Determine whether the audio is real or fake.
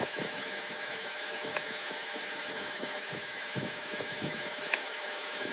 fake